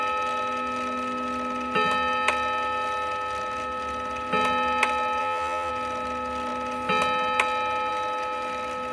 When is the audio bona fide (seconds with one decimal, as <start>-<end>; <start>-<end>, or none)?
0.0-5.2; 5.7-8.9